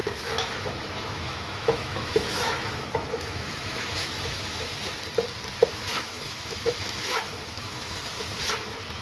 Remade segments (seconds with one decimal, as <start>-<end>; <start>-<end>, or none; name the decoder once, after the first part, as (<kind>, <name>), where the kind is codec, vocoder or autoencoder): 0.0-4.8 (autoencoder, DAC-VAE); 5.7-8.1